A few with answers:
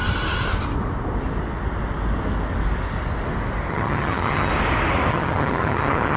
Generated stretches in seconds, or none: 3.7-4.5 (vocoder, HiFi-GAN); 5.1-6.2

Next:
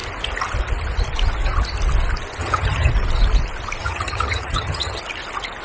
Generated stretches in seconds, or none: 2.4-2.9 (vocoder, HiFi-GAN); 3.8-5.0

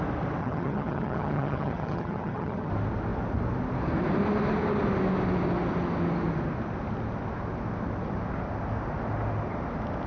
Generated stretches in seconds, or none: 0.4-2.7 (vocoder, HiFi-GAN)

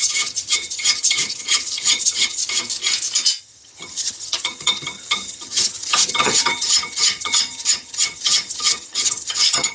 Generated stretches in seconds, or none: 0.0-2.4 (vocoder, HiFi-GAN); 3.4-9.7

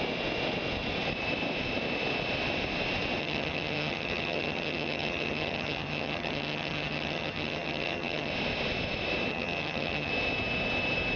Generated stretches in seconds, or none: 3.2-8.3 (vocoder, HiFi-GAN); 9.3-10.1

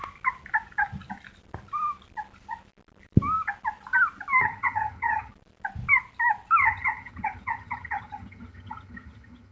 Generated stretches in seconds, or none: 4.4-5.3 (vocoder, HiFi-GAN); 6.6-9.5

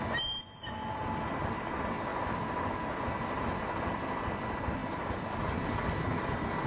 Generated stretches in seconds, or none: none